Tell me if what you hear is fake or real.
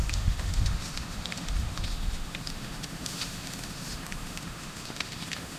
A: fake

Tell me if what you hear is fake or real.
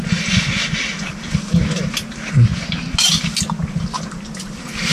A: real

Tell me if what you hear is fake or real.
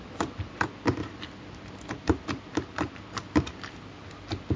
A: real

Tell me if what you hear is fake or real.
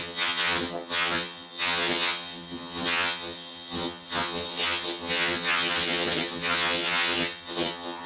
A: fake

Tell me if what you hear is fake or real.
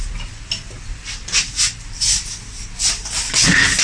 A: real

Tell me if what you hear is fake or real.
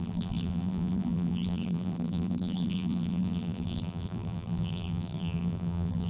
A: fake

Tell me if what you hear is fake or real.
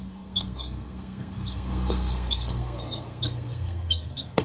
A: fake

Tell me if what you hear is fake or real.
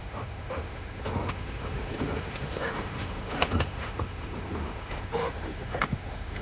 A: fake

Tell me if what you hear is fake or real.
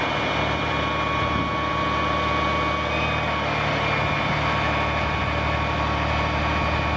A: real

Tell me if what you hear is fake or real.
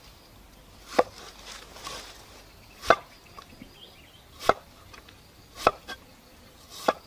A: real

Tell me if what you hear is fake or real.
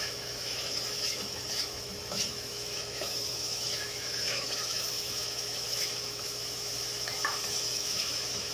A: fake